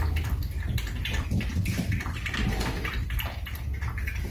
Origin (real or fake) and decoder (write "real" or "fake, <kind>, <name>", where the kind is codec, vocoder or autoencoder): real